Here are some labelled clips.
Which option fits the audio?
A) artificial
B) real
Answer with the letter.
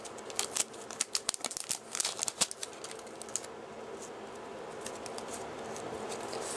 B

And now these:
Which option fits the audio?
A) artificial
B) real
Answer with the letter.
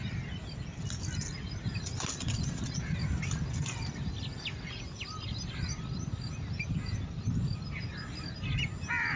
B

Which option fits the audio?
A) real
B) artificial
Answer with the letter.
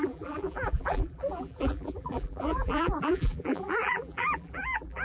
B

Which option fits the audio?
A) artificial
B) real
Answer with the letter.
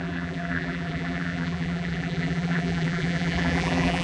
A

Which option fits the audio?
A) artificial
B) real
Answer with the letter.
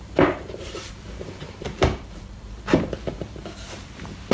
A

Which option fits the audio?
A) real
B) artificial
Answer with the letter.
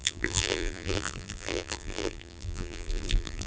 B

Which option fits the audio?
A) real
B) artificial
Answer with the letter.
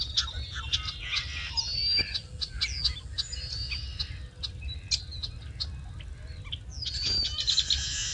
A